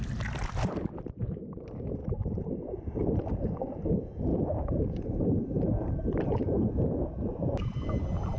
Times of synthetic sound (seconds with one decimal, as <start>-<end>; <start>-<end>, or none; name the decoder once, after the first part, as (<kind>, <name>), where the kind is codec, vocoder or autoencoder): 2.0-3.9 (vocoder, BigVGAN v2); 4.3-6.7